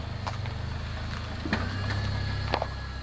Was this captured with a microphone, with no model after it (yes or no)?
yes